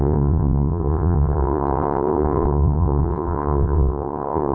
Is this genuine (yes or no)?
no